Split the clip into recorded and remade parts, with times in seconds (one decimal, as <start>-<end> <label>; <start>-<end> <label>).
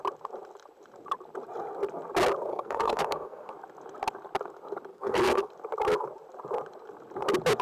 0.0-2.5 recorded; 2.5-3.5 remade; 3.5-4.9 recorded; 4.9-5.5 remade; 5.5-7.6 recorded